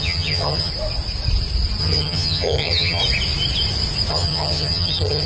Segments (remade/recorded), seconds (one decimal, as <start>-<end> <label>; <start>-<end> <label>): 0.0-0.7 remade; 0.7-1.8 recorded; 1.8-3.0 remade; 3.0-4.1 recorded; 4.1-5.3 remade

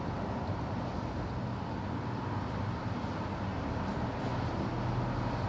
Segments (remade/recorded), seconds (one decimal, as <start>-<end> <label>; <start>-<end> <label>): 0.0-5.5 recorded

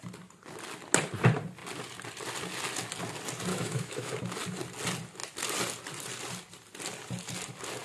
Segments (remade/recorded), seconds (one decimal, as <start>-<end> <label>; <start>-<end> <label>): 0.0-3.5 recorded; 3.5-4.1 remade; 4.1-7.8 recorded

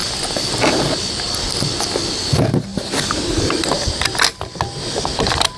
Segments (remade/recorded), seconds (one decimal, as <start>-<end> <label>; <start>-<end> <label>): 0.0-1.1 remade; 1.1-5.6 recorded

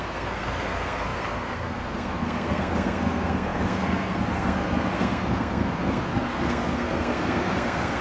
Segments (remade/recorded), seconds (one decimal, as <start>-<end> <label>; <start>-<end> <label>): 0.0-8.0 remade